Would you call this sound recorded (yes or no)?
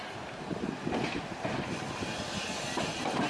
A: yes